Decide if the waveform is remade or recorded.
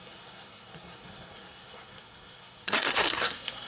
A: remade